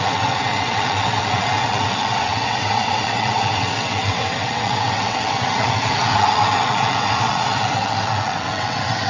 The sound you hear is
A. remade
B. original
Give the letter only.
A